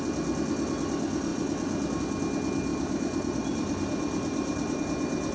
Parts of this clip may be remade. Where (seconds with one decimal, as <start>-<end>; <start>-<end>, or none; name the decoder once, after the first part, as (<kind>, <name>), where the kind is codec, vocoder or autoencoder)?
2.7-4.8 (vocoder, BigVGAN v2)